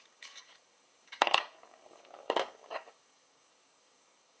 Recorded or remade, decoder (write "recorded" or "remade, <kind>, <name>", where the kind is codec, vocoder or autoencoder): remade, codec, DAC